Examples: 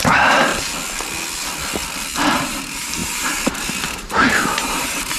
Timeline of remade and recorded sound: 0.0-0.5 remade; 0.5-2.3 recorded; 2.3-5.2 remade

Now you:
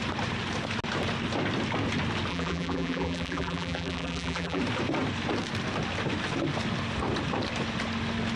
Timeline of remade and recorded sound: 0.0-2.3 recorded; 2.3-4.6 remade; 4.6-8.4 recorded